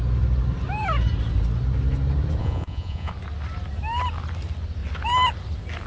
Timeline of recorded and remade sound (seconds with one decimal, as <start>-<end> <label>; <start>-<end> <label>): 0.0-2.4 recorded; 2.4-3.1 remade; 3.1-5.9 recorded